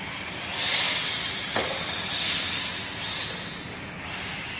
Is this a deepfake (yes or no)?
no